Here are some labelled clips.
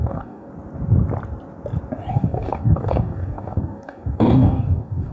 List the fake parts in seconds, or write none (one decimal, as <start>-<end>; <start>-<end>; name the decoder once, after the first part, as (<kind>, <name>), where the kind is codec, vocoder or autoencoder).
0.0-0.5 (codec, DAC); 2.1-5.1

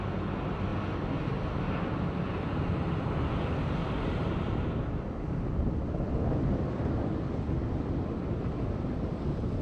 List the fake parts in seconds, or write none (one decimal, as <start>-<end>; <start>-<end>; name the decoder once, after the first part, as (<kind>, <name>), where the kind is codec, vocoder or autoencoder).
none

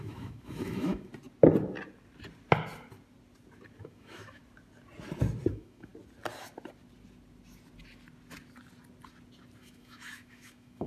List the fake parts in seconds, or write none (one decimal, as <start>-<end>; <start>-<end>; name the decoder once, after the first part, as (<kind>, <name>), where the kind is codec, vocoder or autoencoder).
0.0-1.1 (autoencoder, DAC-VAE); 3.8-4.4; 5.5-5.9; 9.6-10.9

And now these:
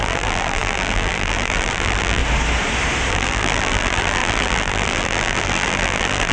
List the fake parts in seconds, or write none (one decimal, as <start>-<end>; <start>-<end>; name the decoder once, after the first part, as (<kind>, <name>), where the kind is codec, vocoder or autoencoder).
0.0-2.2 (vocoder, BigVGAN v2); 3.1-6.3